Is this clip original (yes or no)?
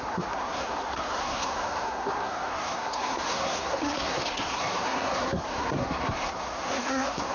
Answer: no